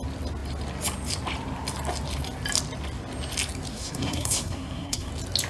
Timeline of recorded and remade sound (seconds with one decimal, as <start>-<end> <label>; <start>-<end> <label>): 0.0-3.7 recorded; 3.7-5.1 remade; 5.1-5.5 recorded